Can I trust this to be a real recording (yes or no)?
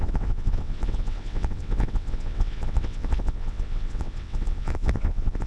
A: no